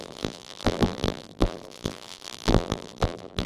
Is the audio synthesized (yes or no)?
yes